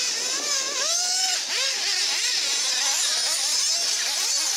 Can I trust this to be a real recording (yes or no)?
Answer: yes